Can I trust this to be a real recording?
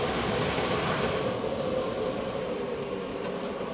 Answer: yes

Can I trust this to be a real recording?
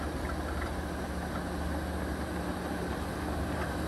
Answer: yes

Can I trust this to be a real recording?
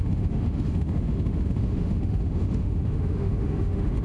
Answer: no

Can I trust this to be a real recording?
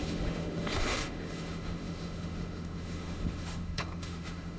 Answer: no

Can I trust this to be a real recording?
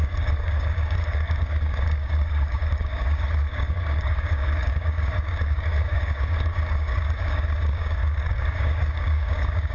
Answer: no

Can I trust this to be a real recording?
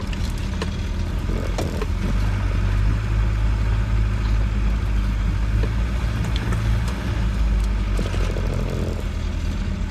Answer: yes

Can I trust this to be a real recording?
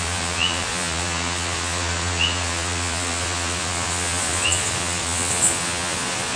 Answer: no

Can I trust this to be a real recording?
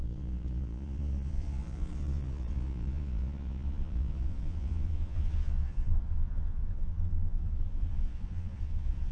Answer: no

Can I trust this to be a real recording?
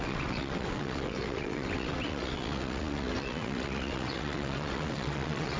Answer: no